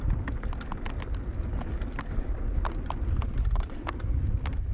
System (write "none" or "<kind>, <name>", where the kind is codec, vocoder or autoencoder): none